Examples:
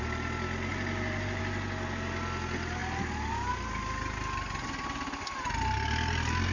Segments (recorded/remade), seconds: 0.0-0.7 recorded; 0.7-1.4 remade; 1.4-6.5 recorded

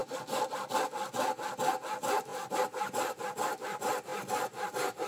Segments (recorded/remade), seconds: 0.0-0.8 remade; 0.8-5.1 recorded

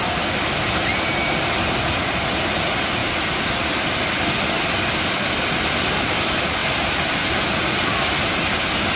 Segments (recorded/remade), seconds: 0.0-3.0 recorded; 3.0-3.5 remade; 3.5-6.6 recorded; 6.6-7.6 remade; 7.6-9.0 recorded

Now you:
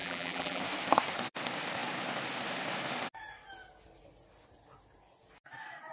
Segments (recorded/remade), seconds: 0.0-0.6 remade; 0.6-5.9 recorded

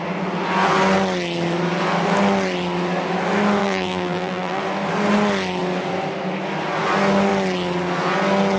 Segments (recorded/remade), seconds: 0.0-3.6 recorded; 3.6-4.6 remade; 4.6-8.6 recorded